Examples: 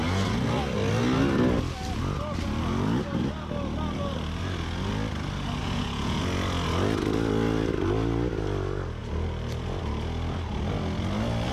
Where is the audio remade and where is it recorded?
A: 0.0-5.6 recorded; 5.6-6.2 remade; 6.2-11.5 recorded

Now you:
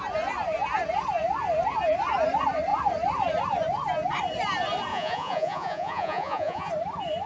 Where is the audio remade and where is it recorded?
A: 0.0-4.9 recorded; 4.9-6.7 remade; 6.7-7.3 recorded

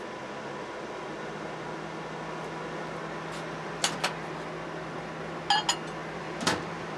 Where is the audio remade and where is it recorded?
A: 0.0-6.0 recorded; 6.0-7.0 remade

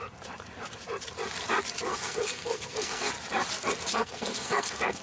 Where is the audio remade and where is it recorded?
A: 0.0-1.9 recorded; 1.9-3.1 remade; 3.1-3.9 recorded; 3.9-5.0 remade